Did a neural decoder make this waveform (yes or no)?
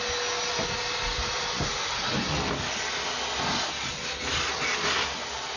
no